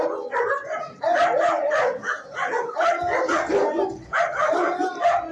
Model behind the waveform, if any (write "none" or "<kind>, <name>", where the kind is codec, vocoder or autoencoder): none